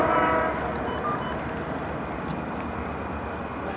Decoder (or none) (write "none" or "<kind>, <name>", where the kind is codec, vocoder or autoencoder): none